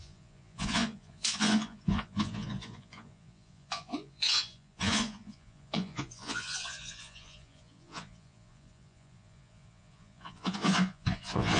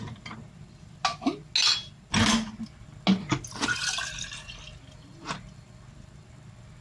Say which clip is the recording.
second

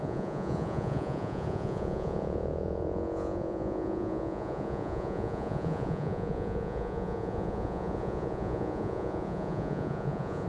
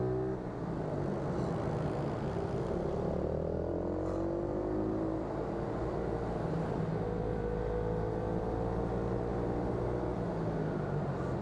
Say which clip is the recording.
second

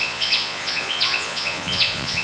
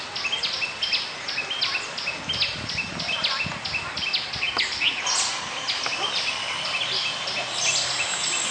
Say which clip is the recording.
second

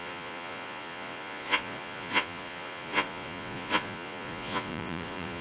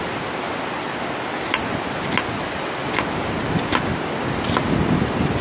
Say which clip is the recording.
second